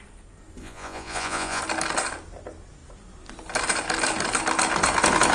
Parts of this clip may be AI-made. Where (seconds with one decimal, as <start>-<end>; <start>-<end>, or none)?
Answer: 0.6-1.6